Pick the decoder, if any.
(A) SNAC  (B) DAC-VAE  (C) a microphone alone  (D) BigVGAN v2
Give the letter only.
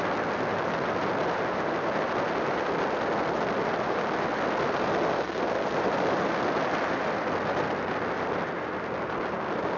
C